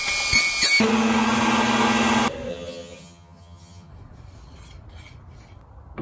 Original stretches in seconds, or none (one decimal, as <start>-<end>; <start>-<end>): 0.0-2.5; 3.9-6.0